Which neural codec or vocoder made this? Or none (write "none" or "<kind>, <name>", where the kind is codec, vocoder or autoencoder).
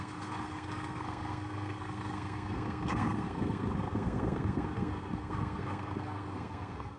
codec, SNAC